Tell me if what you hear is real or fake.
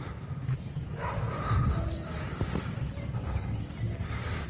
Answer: real